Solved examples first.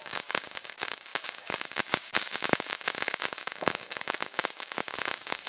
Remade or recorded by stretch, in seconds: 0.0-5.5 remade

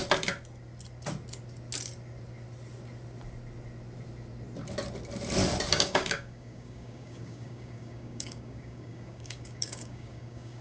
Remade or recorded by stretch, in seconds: 0.0-5.7 recorded; 5.7-10.6 remade

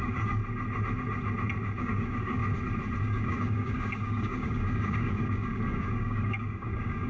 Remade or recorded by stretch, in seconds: 0.0-0.4 remade; 0.4-1.8 recorded; 1.8-2.4 remade; 2.4-3.0 recorded; 3.0-7.1 remade

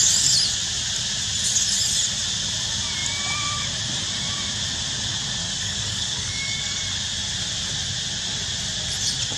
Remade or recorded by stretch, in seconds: 0.0-5.4 recorded; 5.4-6.8 remade; 6.8-9.4 recorded

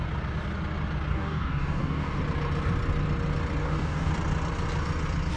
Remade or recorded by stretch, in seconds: 0.0-1.1 recorded; 1.1-2.2 remade; 2.2-3.6 recorded; 3.6-4.1 remade; 4.1-5.4 recorded

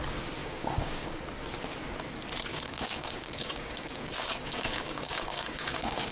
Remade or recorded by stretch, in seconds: 0.0-0.4 recorded; 0.4-1.2 remade; 1.2-2.5 recorded; 2.5-6.1 remade

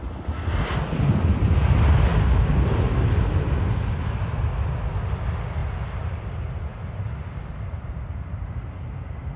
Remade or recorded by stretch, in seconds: 0.0-9.4 recorded

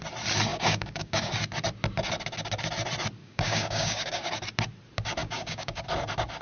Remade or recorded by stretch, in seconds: 0.0-0.5 recorded; 0.5-1.3 remade; 1.3-3.2 recorded; 3.2-4.3 remade; 4.3-5.2 recorded; 5.2-5.8 remade; 5.8-6.4 recorded